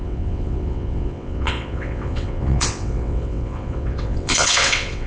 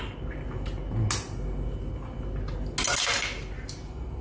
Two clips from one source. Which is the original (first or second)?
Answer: second